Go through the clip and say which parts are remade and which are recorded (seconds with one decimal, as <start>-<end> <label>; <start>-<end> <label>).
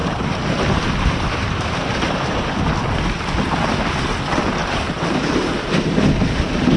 0.0-2.6 remade; 2.6-4.6 recorded; 4.6-5.6 remade; 5.6-6.8 recorded